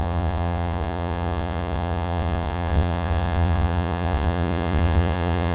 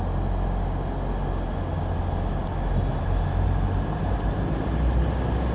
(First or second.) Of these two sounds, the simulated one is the first